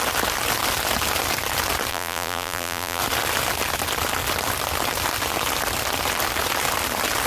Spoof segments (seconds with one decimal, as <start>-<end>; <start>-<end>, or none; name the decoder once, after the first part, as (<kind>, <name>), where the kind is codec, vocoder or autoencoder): 1.9-3.0 (vocoder, BigVGAN v2)